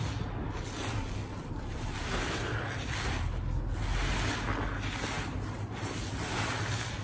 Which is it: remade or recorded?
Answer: recorded